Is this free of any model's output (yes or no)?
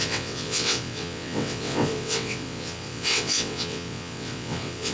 no